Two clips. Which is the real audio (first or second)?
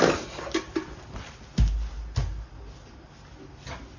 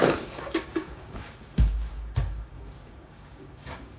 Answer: first